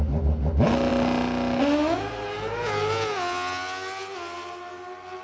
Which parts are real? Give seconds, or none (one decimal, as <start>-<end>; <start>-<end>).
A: 0.0-5.2